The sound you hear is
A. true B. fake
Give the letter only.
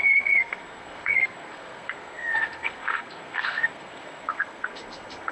B